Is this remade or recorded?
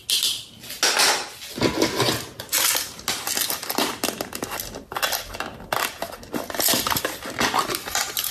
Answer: recorded